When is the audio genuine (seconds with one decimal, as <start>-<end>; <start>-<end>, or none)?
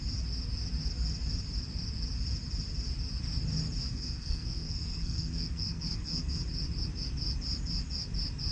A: 0.0-3.8; 6.4-8.5